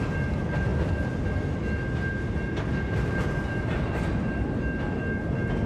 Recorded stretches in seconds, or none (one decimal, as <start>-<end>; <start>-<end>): 0.0-5.7